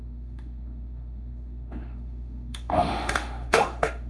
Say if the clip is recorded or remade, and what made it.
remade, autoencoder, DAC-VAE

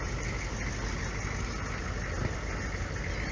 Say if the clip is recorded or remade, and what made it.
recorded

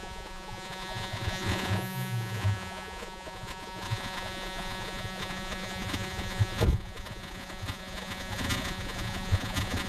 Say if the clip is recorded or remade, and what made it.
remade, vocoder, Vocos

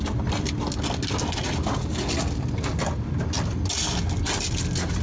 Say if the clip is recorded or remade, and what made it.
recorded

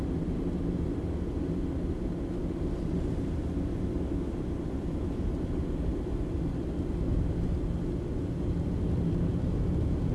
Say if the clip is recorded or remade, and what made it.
recorded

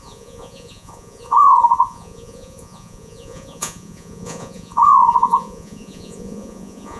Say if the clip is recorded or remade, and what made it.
remade, vocoder, Vocos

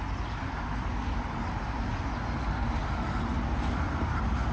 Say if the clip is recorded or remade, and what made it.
recorded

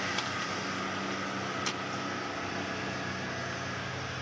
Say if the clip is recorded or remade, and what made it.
recorded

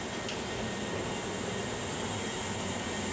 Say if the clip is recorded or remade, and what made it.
recorded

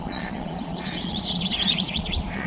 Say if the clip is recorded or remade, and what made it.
remade, vocoder, Vocos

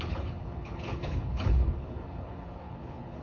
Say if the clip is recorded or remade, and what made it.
remade, codec, HILCodec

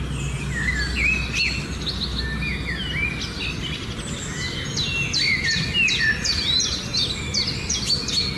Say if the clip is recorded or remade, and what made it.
recorded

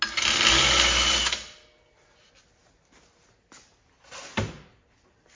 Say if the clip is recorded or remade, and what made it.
recorded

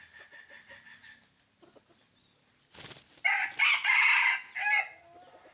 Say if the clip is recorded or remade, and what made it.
recorded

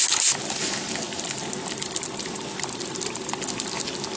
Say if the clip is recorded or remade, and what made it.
recorded